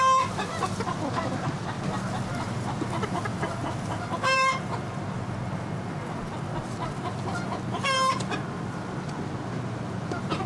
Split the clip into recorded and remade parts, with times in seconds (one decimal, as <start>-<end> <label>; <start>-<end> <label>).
0.0-3.3 recorded; 3.3-4.8 remade; 4.8-10.5 recorded